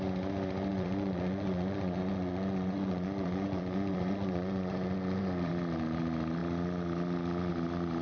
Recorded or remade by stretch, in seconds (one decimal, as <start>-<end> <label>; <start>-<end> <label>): 0.0-0.7 recorded; 0.7-5.5 remade; 5.5-8.0 recorded